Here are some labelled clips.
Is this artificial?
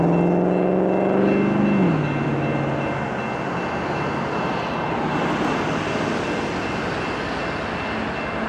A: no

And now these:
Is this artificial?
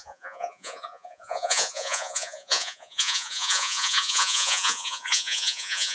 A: yes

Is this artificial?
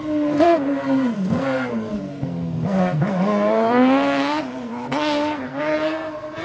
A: yes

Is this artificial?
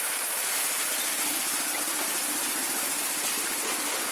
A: no